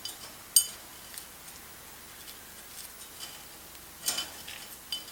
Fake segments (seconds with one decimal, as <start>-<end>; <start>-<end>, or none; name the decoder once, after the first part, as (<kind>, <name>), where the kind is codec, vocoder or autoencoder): none